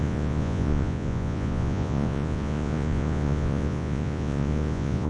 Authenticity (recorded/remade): remade